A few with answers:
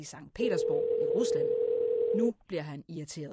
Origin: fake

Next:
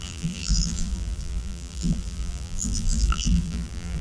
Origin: fake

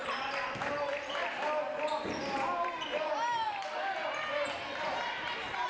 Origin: real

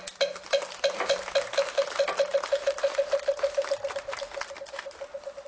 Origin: real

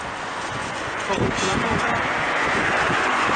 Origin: fake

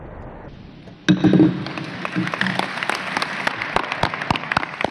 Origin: real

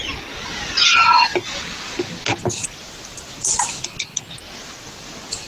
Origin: real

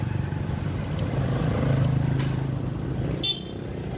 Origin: real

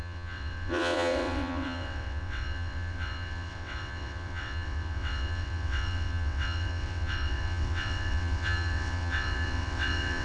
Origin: fake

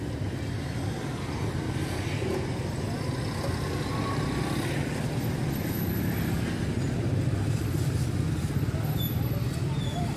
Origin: real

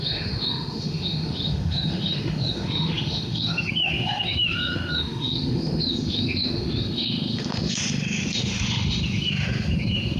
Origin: fake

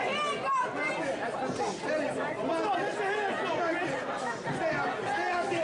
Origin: real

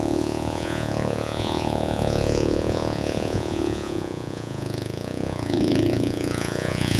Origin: fake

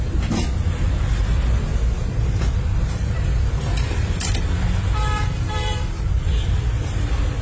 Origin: fake